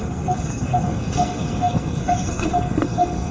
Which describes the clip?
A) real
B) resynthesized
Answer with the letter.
B